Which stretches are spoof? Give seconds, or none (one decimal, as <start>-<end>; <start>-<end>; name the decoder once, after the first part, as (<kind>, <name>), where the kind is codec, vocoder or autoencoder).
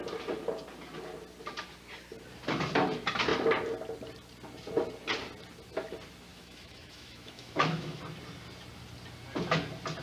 6.3-8.0 (autoencoder, DAC-VAE)